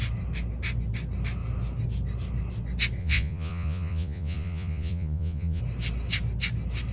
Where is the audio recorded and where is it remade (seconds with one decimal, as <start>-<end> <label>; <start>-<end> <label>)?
0.0-3.0 recorded; 3.0-5.6 remade; 5.6-6.9 recorded

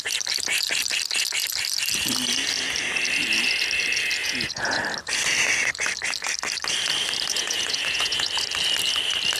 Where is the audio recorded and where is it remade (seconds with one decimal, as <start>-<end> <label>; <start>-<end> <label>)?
0.0-4.2 recorded; 4.2-4.8 remade; 4.8-7.3 recorded; 7.3-8.3 remade; 8.3-9.4 recorded